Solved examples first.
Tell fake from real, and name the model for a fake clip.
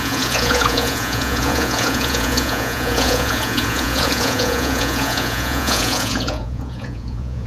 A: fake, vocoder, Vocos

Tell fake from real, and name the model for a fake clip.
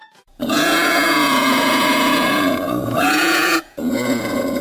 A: fake, vocoder, Vocos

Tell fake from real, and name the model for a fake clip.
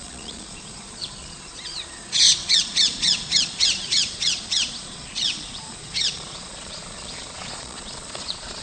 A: fake, vocoder, Vocos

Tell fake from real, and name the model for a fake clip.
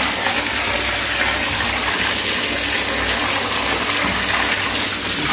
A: real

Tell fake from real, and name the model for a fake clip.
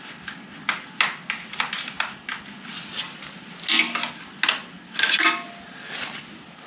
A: real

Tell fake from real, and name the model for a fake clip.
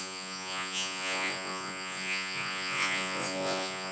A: fake, vocoder, Vocos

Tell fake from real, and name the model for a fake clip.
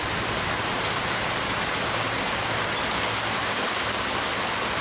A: real